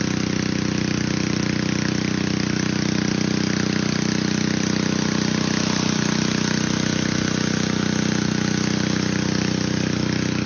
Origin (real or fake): real